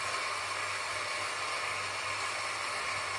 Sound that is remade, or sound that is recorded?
recorded